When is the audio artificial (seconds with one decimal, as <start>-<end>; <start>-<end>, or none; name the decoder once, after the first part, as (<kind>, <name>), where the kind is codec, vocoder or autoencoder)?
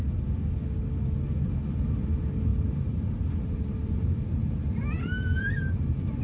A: 2.5-6.2 (vocoder, BigVGAN v2)